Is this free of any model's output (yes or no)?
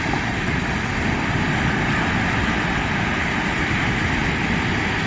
no